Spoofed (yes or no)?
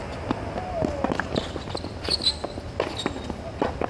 no